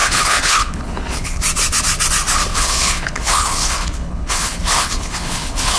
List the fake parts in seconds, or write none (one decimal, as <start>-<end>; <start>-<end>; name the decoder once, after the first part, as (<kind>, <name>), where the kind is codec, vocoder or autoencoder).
0.0-1.4 (codec, HILCodec); 2.5-5.8